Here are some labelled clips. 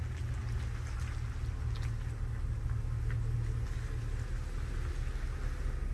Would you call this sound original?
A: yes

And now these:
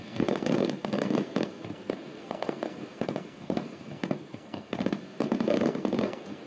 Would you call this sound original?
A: no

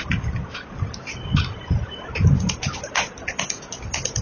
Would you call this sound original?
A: yes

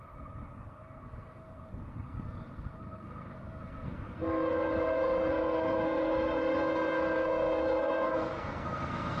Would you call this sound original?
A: no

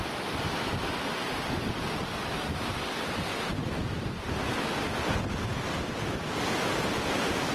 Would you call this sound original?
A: yes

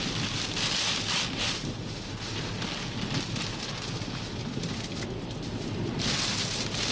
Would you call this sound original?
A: yes